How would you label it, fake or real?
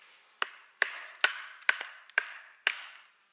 real